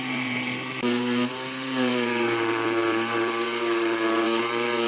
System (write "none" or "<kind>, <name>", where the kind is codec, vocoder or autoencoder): vocoder, BigVGAN v2